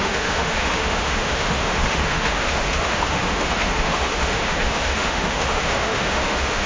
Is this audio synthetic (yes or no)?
yes